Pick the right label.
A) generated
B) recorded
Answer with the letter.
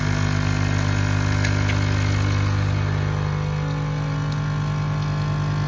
B